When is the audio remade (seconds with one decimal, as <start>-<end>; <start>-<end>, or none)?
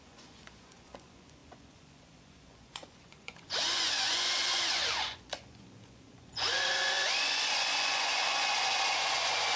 0.0-9.6